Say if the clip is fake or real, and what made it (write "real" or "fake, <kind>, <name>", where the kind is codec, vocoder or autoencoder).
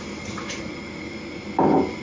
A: real